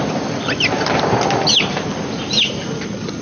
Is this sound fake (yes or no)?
no